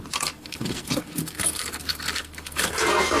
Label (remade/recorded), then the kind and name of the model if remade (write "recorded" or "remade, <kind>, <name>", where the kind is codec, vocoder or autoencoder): remade, codec, SNAC